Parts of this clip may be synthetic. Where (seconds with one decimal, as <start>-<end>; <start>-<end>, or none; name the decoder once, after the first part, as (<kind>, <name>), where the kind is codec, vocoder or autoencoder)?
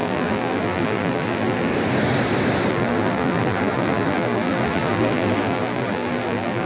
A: 0.0-1.7 (vocoder, BigVGAN v2); 2.7-6.7